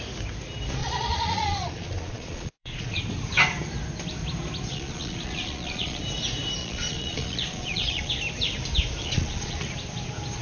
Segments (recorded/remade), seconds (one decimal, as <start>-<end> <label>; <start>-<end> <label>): 0.0-0.8 recorded; 0.8-3.0 remade; 3.0-4.7 recorded; 4.7-6.0 remade; 6.0-6.6 recorded; 6.6-8.1 remade; 8.1-9.0 recorded; 9.0-9.7 remade; 9.7-10.4 recorded